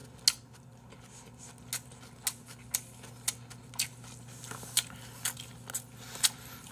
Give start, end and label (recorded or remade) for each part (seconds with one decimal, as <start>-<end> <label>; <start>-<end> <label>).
0.0-6.7 recorded